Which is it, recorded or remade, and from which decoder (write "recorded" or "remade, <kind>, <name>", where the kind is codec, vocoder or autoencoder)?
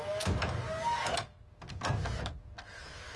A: recorded